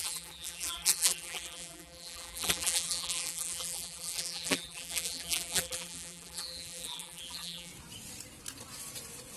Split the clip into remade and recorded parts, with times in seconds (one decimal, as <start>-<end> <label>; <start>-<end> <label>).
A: 0.0-7.7 remade; 7.7-9.4 recorded